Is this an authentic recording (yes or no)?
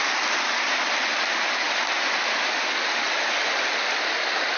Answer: yes